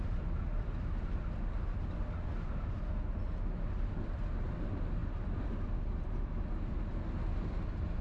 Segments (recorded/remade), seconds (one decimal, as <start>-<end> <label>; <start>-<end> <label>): 0.0-8.0 recorded